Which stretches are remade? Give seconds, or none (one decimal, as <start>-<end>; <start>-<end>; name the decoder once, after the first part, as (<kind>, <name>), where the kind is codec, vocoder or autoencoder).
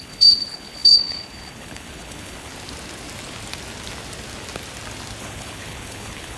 0.0-2.5 (codec, HILCodec); 5.2-6.4